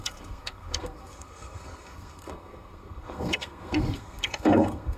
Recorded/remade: remade